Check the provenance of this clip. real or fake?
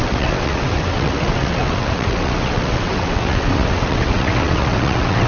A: fake